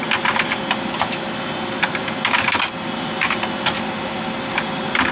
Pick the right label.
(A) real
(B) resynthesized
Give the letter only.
A